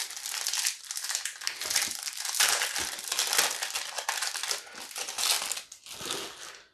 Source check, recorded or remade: recorded